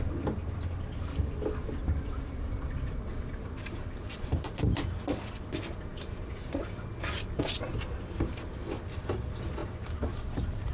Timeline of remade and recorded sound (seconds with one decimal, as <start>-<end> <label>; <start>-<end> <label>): 0.0-1.6 recorded; 1.6-5.0 remade; 5.0-5.9 recorded; 5.9-6.6 remade; 6.6-9.6 recorded; 9.6-10.7 remade